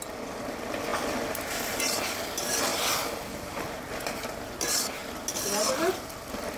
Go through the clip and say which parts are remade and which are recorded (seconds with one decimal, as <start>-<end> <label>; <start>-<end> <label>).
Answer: 0.0-6.6 recorded